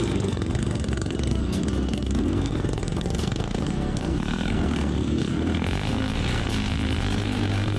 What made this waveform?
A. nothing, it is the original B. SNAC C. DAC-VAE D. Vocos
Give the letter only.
B